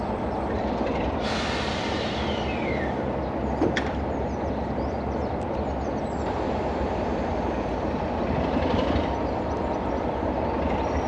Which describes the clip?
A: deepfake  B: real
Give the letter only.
A